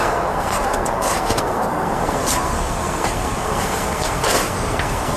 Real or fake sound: fake